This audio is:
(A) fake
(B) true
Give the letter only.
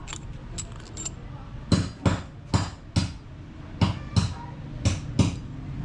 B